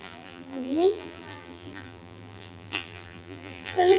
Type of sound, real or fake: fake